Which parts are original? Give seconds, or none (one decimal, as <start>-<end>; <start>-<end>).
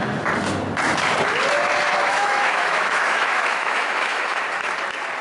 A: 0.0-2.0; 4.4-5.2